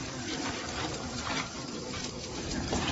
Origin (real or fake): fake